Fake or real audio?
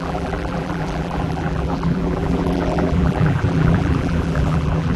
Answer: fake